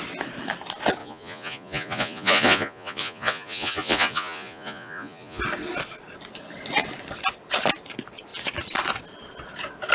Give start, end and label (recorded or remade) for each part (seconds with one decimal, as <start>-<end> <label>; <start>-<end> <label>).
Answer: 0.0-1.0 recorded; 1.0-5.4 remade; 5.4-9.9 recorded